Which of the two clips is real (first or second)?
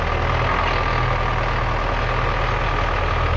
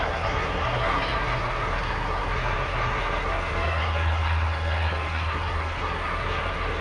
first